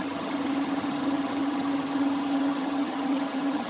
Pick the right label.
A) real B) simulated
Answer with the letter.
B